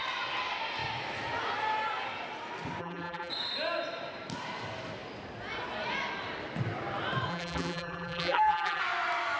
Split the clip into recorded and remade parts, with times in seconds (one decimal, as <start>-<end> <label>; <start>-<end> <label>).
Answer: 0.0-2.8 recorded; 2.8-3.3 remade; 3.3-7.3 recorded; 7.3-8.8 remade; 8.8-9.4 recorded